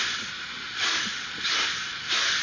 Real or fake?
real